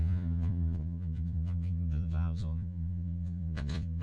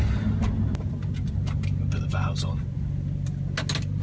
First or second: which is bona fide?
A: second